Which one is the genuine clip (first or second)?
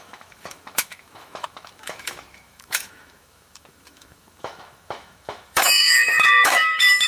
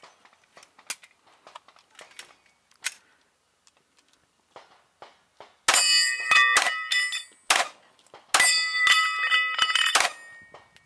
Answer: second